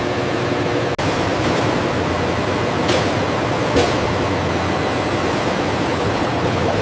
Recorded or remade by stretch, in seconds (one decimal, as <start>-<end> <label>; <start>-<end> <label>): 0.0-5.9 recorded; 5.9-6.8 remade